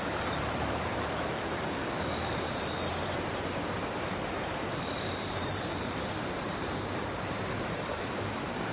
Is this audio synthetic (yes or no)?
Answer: yes